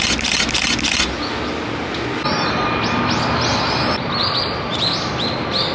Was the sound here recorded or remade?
recorded